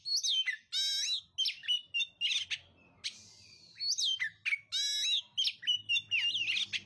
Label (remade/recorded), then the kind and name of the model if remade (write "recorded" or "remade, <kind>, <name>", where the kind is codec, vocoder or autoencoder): recorded